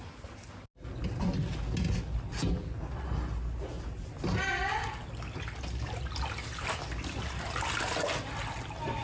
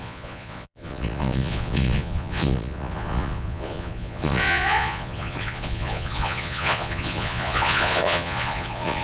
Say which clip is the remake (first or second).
second